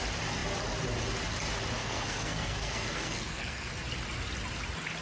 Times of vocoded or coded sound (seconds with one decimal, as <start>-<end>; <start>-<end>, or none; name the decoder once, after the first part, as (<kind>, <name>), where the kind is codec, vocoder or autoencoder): 1.8-3.7 (codec, SNAC)